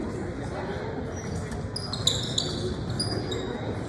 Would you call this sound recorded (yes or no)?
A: yes